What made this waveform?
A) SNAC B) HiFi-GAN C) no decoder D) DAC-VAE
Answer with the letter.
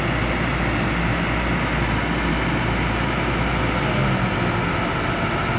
C